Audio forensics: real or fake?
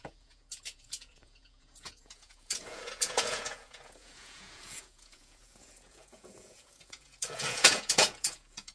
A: fake